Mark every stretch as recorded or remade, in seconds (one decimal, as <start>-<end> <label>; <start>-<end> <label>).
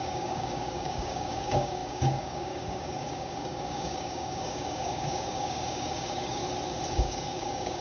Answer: 0.0-6.4 remade; 6.4-6.9 recorded; 6.9-7.8 remade